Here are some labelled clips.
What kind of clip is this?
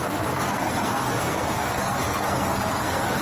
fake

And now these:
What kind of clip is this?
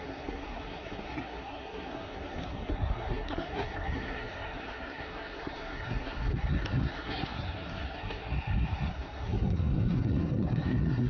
fake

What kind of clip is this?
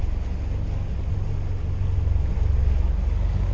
real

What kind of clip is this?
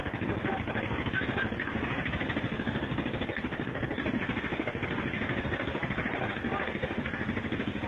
real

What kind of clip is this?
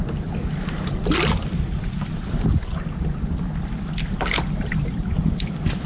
real